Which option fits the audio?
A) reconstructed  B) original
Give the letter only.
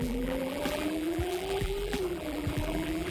A